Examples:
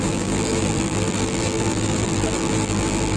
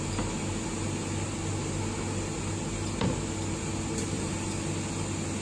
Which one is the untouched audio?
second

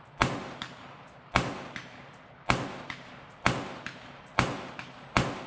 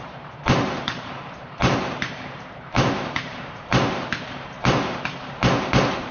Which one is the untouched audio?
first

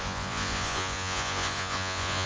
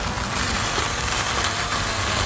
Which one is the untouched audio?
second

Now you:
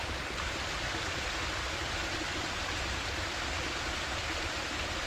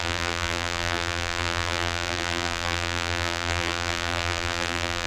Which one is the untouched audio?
first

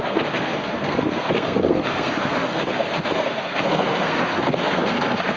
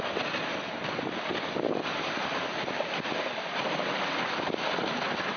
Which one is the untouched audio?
second